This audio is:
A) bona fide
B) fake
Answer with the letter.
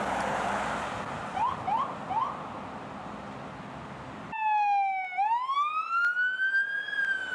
A